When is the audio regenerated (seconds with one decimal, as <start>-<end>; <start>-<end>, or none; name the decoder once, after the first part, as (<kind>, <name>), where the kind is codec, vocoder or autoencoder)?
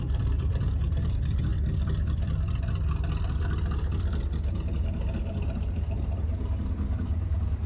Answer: 0.0-1.5 (vocoder, BigVGAN v2); 4.5-7.7